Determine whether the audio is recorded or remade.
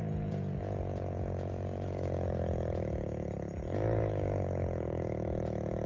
remade